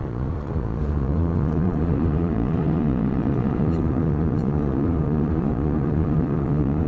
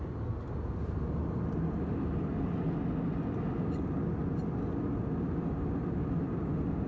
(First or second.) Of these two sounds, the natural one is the second